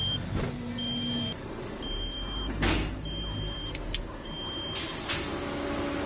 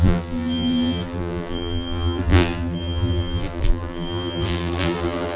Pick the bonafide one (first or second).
first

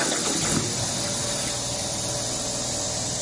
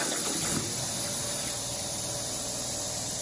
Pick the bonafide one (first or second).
first